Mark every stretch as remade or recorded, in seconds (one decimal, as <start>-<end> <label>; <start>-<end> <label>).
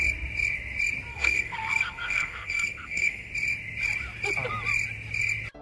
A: 0.0-1.1 recorded; 1.1-3.3 remade; 3.3-5.6 recorded